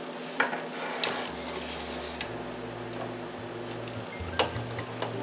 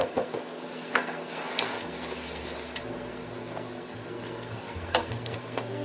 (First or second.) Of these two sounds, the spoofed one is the second